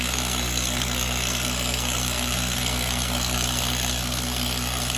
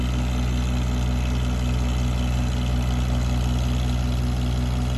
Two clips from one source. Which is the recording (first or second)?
second